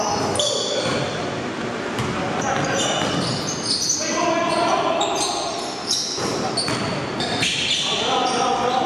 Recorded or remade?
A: recorded